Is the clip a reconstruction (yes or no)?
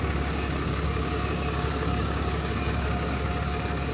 yes